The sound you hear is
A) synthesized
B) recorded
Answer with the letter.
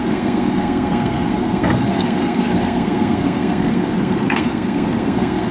A